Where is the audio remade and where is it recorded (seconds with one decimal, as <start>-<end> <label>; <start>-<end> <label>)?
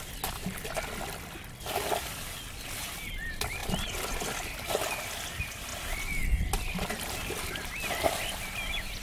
0.0-9.0 recorded